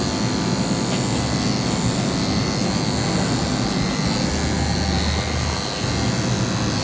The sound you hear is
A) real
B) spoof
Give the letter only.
A